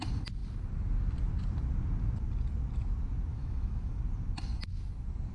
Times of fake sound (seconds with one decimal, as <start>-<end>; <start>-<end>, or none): 3.3-4.0